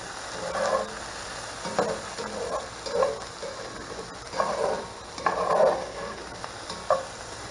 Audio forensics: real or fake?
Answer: real